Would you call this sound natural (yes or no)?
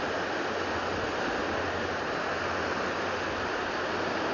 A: yes